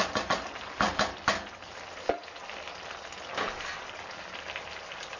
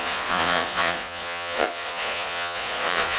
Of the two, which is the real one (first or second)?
first